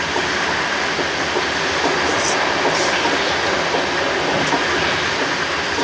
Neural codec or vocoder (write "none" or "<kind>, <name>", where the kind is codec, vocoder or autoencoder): none